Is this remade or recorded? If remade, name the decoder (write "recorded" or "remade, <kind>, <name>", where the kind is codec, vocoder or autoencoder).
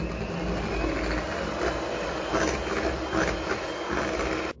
recorded